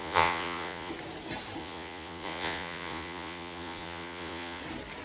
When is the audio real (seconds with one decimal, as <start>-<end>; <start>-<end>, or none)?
0.9-1.6; 4.6-5.0